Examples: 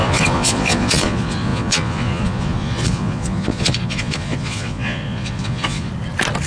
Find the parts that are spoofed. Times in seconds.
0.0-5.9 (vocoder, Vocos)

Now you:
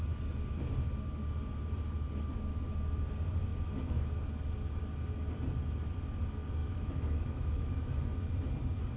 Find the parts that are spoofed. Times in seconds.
6.6-8.0 (autoencoder, DAC-VAE)

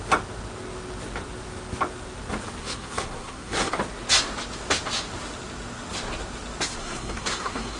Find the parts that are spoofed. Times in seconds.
2.6-3.7 (codec, SNAC); 6.8-7.8

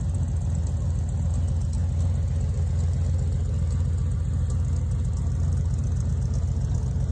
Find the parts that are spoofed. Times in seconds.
none

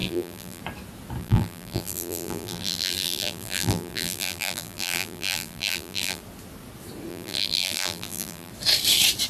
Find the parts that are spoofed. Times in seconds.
0.0-0.6 (vocoder, BigVGAN v2); 1.2-6.2; 7.1-8.5

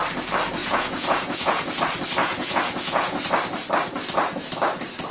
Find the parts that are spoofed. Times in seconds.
0.6-1.8 (vocoder, Vocos); 2.2-3.2